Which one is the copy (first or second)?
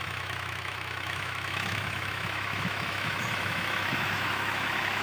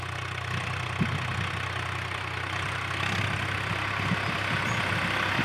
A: first